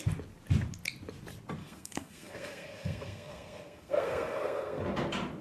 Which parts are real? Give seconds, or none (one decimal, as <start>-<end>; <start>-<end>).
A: 0.0-1.6; 4.8-5.4